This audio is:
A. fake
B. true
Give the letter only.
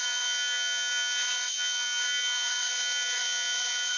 A